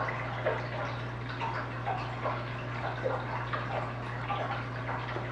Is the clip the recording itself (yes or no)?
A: yes